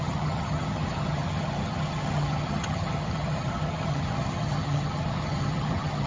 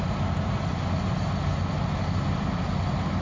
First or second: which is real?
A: second